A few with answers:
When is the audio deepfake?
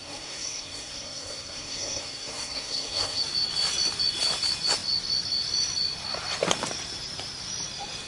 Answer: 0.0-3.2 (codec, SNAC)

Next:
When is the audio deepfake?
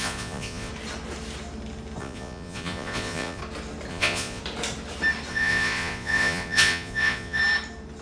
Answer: 0.0-0.7 (vocoder, Vocos); 2.0-3.4; 3.9-4.4; 5.3-7.4